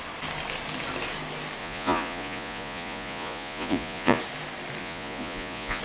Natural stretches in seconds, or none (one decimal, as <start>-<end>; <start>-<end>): 0.0-1.6; 4.2-4.8